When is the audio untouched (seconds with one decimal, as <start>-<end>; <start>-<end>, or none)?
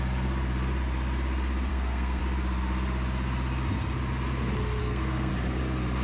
0.0-1.7; 2.2-4.8; 5.3-6.0